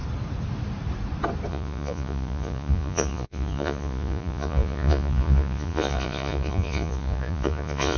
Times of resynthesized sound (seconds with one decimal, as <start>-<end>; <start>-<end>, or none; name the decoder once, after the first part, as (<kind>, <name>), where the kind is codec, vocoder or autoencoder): 1.5-8.0 (vocoder, Vocos)